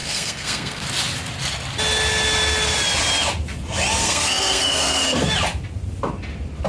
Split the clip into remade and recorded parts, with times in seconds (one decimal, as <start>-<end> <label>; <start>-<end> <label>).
0.0-0.8 remade; 0.8-4.0 recorded; 4.0-5.3 remade; 5.3-6.7 recorded